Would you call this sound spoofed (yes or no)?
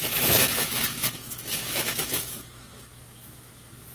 yes